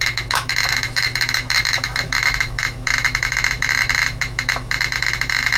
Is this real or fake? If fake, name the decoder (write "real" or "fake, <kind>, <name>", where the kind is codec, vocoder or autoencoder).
fake, autoencoder, DAC-VAE